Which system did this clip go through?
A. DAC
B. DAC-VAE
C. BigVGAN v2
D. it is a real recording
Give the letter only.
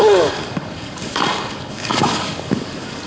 A